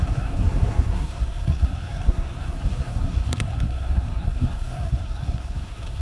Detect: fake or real fake